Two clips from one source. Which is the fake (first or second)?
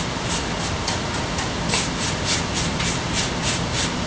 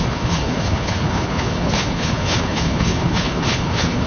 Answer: second